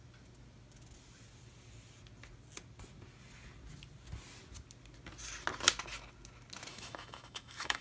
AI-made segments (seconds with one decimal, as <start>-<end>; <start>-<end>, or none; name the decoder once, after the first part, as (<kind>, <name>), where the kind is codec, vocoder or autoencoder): 6.7-7.8 (autoencoder, DAC-VAE)